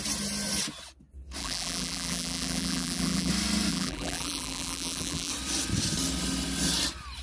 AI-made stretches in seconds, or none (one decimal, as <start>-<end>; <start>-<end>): 1.4-3.3; 3.7-5.3